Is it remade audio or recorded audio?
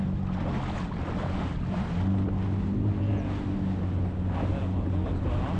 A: recorded